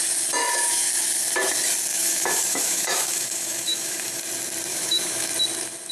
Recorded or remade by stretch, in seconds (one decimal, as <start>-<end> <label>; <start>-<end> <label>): 0.0-0.4 recorded; 0.4-0.9 remade; 0.9-1.9 recorded; 1.9-4.2 remade; 4.2-4.7 recorded; 4.7-5.3 remade; 5.3-5.9 recorded

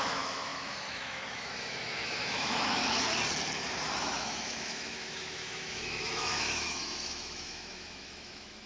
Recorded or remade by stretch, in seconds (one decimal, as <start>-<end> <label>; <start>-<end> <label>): 0.0-2.8 remade; 2.8-4.0 recorded; 4.0-8.7 remade

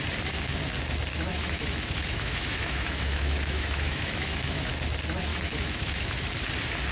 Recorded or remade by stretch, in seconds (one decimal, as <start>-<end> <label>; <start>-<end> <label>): 0.0-1.1 recorded; 1.1-4.7 remade; 4.7-5.3 recorded; 5.3-6.2 remade; 6.2-6.9 recorded

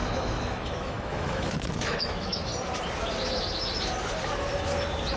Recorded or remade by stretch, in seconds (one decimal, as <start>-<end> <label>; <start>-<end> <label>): 0.0-2.5 remade; 2.5-5.2 recorded

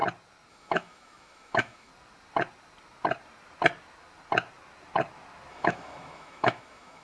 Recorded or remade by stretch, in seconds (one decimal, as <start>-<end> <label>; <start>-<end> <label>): 0.0-0.5 recorded; 0.5-1.9 remade; 1.9-5.5 recorded; 5.5-7.0 remade

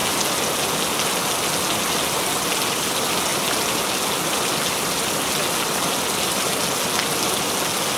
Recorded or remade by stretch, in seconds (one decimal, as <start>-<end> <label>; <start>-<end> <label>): 0.0-8.0 recorded